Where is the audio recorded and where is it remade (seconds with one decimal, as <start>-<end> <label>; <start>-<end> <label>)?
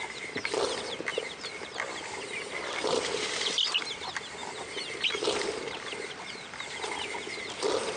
0.0-8.0 recorded